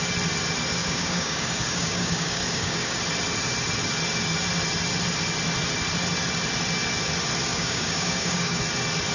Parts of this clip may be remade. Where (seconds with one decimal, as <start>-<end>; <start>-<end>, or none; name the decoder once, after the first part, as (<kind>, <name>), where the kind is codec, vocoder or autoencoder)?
0.8-3.0 (codec, DAC); 7.5-8.6